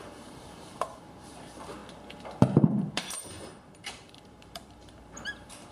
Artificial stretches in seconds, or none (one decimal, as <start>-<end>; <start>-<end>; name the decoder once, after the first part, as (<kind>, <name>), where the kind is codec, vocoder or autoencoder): 0.0-1.8 (vocoder, BigVGAN v2); 2.4-5.7

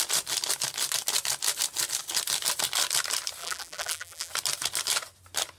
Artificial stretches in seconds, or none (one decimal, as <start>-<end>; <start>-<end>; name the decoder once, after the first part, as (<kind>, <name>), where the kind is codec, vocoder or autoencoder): 3.4-4.3 (vocoder, BigVGAN v2)

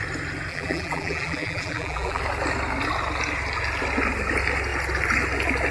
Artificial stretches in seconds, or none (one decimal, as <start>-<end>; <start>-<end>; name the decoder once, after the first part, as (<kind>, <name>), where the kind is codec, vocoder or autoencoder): 0.5-2.2 (vocoder, BigVGAN v2)

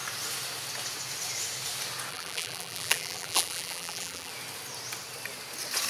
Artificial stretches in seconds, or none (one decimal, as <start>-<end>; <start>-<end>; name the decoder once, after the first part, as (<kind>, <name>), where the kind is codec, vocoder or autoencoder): 2.1-4.3 (vocoder, BigVGAN v2)

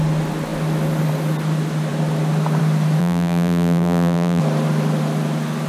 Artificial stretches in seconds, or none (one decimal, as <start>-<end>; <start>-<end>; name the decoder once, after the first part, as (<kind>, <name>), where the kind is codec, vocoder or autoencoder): 3.0-4.4 (vocoder, BigVGAN v2)